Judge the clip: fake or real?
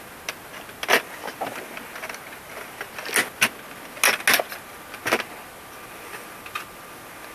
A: real